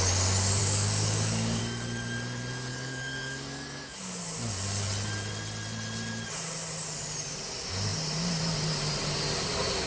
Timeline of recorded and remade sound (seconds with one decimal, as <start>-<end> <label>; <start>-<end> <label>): 0.0-0.6 recorded; 0.6-1.6 remade; 1.6-2.7 recorded; 2.7-4.2 remade; 4.2-9.9 recorded